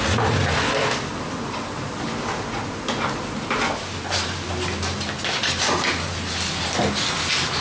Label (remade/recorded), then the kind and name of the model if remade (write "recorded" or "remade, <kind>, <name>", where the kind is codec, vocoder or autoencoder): recorded